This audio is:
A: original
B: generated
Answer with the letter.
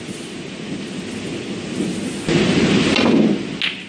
A